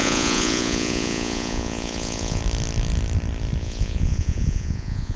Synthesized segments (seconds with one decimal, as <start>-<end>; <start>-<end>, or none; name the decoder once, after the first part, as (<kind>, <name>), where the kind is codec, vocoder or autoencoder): 0.0-2.4 (vocoder, Vocos); 3.6-5.2